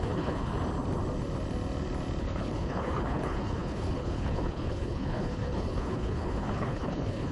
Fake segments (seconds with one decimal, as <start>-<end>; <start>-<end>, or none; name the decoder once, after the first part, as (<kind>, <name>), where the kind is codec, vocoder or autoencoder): 0.0-0.5 (codec, HILCodec); 2.2-7.3